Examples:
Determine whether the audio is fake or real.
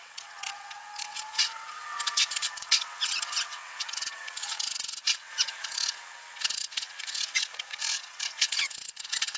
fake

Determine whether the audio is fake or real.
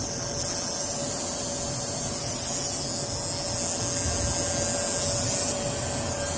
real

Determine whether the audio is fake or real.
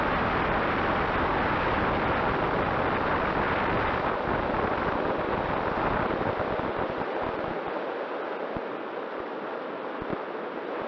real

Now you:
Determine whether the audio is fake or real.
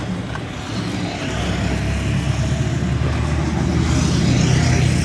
real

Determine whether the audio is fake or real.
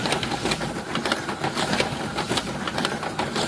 real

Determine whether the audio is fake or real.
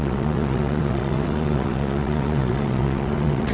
fake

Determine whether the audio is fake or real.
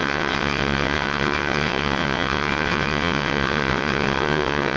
fake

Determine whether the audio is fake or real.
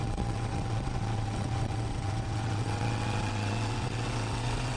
fake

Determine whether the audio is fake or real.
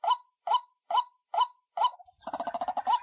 real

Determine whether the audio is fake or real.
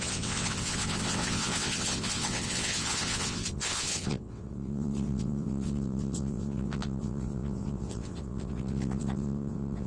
fake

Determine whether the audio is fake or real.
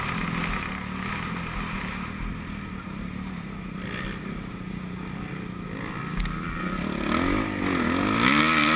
real